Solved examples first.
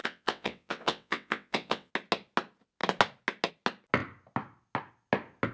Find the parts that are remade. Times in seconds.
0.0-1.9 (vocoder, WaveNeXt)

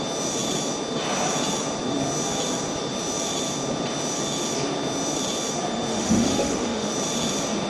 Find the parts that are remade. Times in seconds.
5.9-6.9 (autoencoder, DAC-VAE)

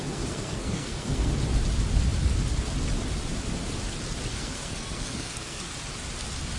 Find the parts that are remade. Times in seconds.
0.0-1.3 (codec, SNAC); 4.3-5.7

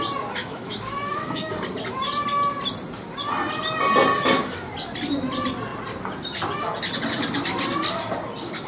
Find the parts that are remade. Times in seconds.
0.4-1.5 (autoencoder, DAC-VAE)

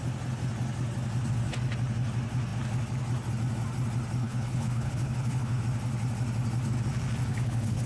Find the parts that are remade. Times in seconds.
4.2-5.6 (codec, HILCodec); 7.3-7.9